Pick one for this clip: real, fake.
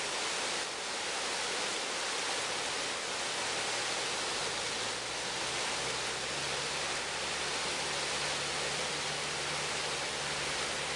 real